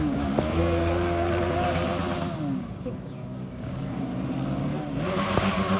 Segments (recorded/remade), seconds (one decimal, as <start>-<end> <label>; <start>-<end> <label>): 0.0-0.6 remade; 0.6-1.5 recorded; 1.5-2.0 remade; 2.0-2.6 recorded; 2.6-4.1 remade; 4.1-5.1 recorded; 5.1-5.8 remade